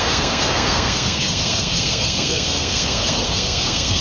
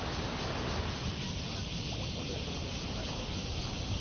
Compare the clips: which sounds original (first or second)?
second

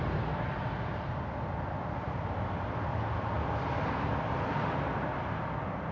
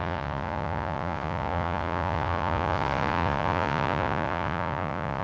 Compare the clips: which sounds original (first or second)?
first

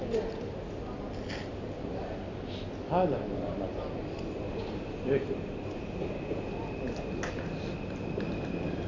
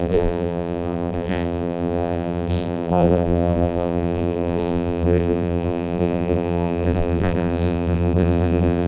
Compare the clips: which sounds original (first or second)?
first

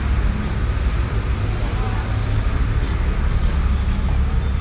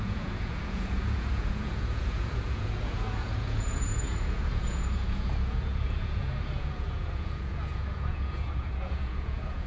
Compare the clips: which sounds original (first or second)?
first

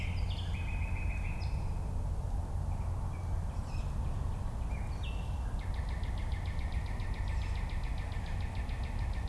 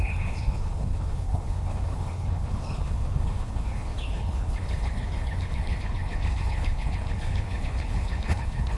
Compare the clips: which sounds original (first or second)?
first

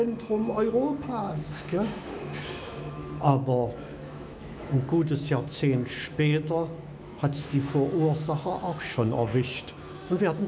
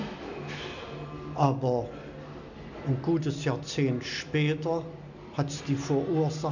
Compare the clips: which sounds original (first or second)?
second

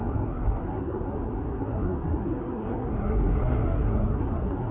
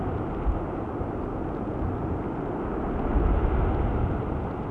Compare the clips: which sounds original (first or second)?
second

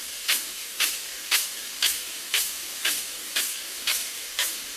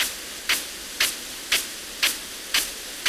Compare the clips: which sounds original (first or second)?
second